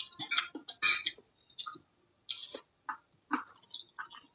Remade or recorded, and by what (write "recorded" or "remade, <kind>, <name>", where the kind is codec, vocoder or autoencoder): recorded